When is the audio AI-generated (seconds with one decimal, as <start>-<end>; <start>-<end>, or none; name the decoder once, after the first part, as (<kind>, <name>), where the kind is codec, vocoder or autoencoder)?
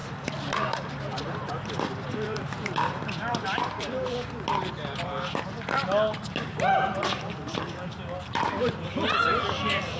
0.0-10.0 (vocoder, BigVGAN v2)